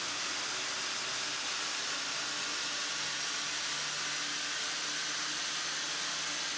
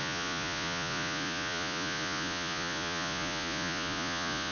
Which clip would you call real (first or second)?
first